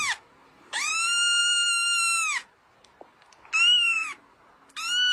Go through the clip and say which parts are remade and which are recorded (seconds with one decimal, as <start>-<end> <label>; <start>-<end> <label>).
0.0-0.4 recorded; 0.4-0.9 remade; 0.9-5.1 recorded